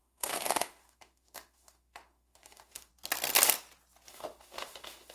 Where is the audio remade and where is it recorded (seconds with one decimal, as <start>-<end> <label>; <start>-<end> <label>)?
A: 0.0-2.9 remade; 2.9-4.1 recorded; 4.1-5.1 remade